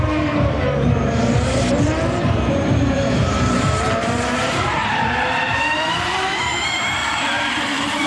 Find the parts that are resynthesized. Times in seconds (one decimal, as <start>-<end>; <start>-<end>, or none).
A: 0.0-8.1